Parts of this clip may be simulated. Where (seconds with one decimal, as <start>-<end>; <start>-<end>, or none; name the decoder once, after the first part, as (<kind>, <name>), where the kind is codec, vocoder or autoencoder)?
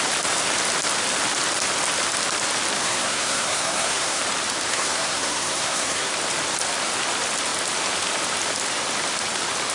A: 2.8-4.2 (codec, SNAC); 4.7-6.1